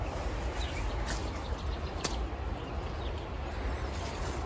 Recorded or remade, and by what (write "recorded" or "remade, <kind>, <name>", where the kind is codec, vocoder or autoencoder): recorded